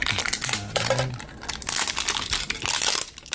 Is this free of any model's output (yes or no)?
yes